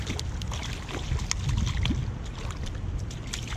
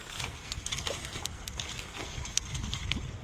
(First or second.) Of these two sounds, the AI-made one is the second